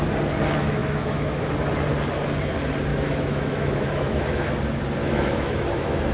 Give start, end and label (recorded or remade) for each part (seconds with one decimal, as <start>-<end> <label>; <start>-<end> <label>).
0.0-0.8 recorded; 0.8-1.5 remade; 1.5-2.9 recorded; 2.9-4.5 remade; 4.5-5.0 recorded; 5.0-6.1 remade